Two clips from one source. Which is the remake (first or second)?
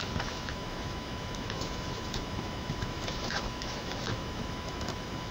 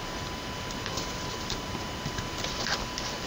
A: first